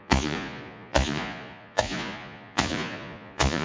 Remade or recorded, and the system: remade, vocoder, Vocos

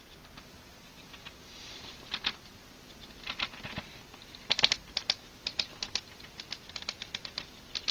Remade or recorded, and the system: recorded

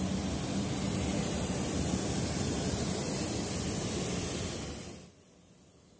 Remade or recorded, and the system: recorded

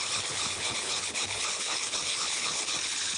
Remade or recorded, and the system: remade, codec, HILCodec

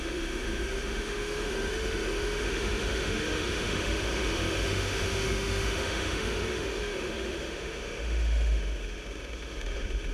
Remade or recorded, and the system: remade, autoencoder, DAC-VAE